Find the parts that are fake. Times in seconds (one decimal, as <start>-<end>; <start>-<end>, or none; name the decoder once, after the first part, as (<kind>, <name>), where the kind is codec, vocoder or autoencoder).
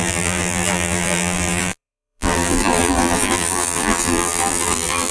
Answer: 0.0-5.1 (vocoder, BigVGAN v2)